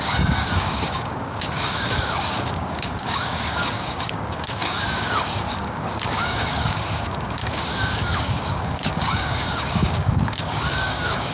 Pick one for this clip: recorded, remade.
remade